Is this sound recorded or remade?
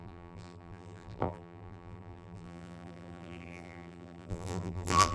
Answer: remade